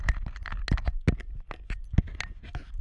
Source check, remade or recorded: recorded